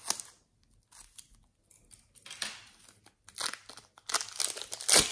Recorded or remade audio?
recorded